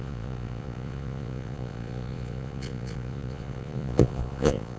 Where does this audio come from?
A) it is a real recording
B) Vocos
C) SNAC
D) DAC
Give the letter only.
B